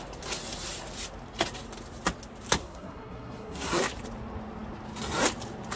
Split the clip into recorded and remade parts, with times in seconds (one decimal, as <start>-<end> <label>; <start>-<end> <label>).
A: 0.0-2.6 recorded; 2.6-3.8 remade; 3.8-5.8 recorded